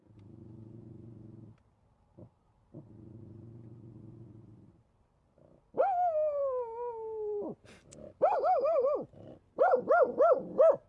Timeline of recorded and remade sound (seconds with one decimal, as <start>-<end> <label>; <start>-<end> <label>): 0.0-10.9 recorded